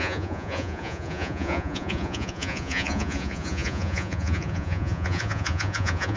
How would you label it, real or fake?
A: fake